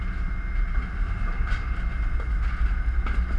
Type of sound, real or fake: real